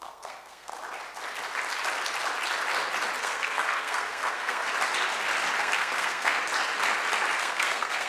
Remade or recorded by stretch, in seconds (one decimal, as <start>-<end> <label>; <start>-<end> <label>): 0.0-0.7 remade; 0.7-3.2 recorded; 3.2-4.6 remade; 4.6-5.6 recorded; 5.6-6.4 remade; 6.4-7.4 recorded; 7.4-8.1 remade